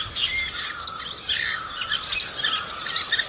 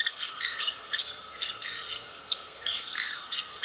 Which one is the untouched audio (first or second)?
first